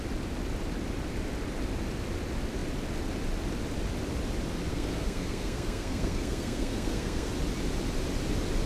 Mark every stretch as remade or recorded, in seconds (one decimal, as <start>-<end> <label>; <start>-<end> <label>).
0.0-4.7 recorded; 4.7-7.3 remade; 7.3-8.7 recorded

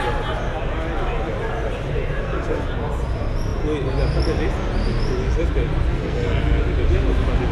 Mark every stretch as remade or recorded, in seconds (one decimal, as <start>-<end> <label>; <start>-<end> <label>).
0.0-2.2 recorded; 2.2-2.7 remade; 2.7-5.9 recorded; 5.9-6.4 remade; 6.4-7.5 recorded

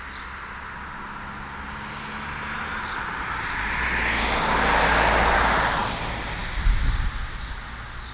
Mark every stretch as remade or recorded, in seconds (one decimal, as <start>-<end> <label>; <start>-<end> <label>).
0.0-8.1 recorded

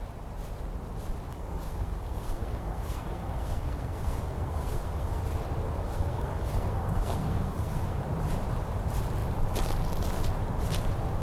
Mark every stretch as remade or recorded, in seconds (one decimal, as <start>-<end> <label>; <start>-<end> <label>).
0.0-1.3 recorded; 1.3-5.2 remade; 5.2-5.8 recorded; 5.8-8.0 remade; 8.0-11.2 recorded

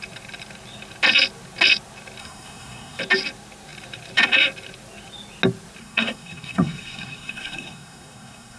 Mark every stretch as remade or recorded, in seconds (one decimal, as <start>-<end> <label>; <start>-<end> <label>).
0.0-2.2 recorded; 2.2-3.0 remade; 3.0-5.8 recorded; 5.8-8.6 remade

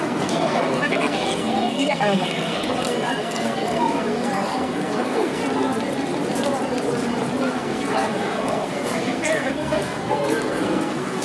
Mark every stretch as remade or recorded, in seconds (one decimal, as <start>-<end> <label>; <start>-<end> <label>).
0.0-5.4 remade; 5.4-7.5 recorded; 7.5-11.2 remade